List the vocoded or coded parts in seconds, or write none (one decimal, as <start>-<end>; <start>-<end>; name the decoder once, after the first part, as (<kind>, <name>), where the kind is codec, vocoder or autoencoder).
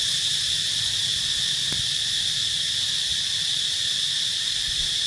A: none